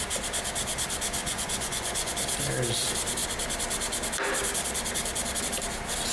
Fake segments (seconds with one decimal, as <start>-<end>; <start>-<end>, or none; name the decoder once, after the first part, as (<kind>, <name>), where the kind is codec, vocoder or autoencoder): 1.2-2.1 (vocoder, Vocos)